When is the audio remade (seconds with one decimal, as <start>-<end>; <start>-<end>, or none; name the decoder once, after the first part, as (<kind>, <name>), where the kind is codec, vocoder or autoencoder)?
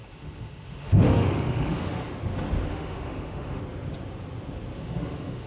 0.0-2.1 (autoencoder, DAC-VAE); 2.7-3.6; 4.7-5.5